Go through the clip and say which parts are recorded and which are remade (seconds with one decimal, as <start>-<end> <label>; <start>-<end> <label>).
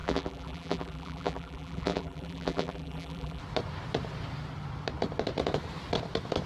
0.0-3.4 remade; 3.4-6.5 recorded